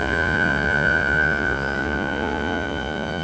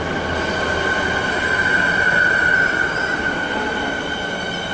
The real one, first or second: second